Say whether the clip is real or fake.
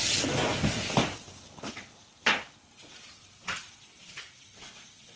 real